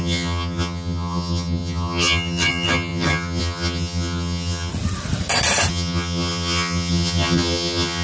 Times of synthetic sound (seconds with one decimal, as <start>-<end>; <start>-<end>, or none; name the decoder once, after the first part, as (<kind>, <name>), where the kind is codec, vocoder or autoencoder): 0.0-4.7 (vocoder, HiFi-GAN); 5.7-8.0